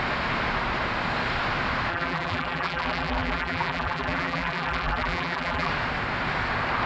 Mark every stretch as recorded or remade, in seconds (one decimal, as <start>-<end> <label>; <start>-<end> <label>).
0.0-1.9 recorded; 1.9-5.7 remade; 5.7-6.9 recorded